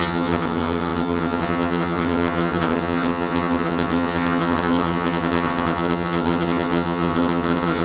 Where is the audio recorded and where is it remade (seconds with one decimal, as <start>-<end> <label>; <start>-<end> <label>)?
0.0-7.8 remade